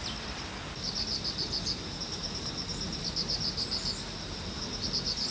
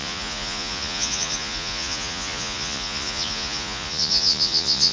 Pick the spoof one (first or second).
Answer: second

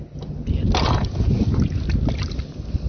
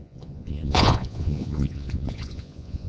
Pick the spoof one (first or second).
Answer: second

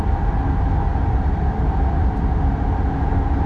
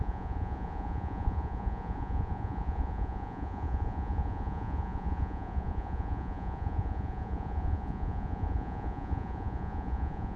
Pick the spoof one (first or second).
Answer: second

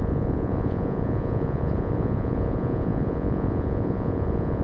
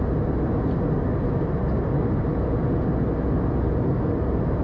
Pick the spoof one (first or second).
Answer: first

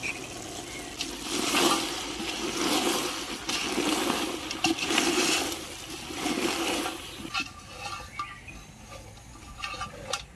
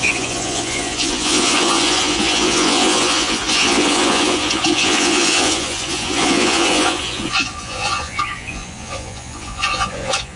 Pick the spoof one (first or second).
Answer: second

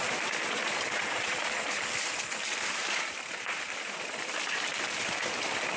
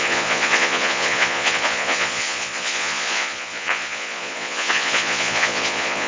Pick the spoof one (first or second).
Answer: second